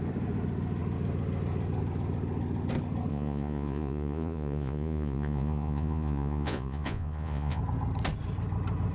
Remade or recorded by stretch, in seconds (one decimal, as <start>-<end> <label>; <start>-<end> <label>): 0.0-3.1 recorded; 3.1-7.6 remade; 7.6-8.9 recorded